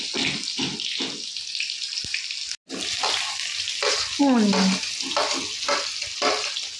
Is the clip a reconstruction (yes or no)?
no